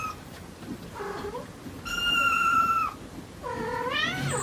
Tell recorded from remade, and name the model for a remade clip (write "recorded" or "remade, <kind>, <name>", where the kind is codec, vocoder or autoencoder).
recorded